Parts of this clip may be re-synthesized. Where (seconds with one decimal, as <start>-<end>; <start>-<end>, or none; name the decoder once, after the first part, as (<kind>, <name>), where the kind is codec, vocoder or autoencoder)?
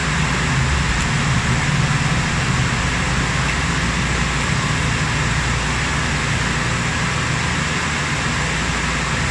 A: none